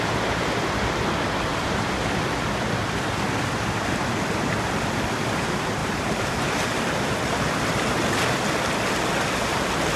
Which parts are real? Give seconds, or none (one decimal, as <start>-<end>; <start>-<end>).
0.0-1.5; 2.1-5.8; 6.4-10.0